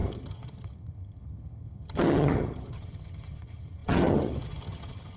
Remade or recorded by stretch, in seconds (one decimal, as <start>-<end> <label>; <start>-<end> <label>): 0.0-5.2 remade